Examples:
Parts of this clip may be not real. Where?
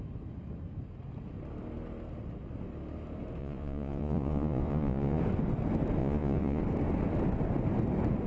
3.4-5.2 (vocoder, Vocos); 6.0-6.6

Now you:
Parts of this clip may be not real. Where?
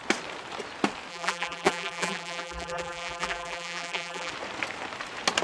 1.1-4.3 (vocoder, BigVGAN v2)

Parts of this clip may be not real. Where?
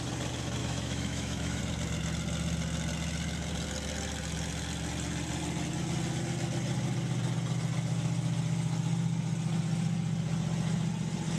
0.6-1.6 (autoencoder, DAC-VAE)